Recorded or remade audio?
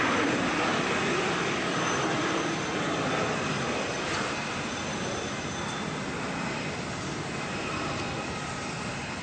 recorded